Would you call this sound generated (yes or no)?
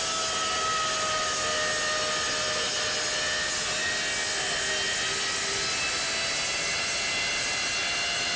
no